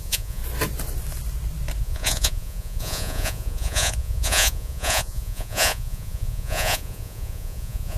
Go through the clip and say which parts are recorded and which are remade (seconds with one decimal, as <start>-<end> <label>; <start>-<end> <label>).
0.0-0.4 remade; 0.4-1.8 recorded; 1.8-8.0 remade